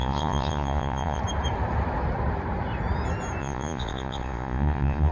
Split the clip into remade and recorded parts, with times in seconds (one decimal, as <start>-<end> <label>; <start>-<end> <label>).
0.0-1.2 remade; 1.2-3.4 recorded; 3.4-5.1 remade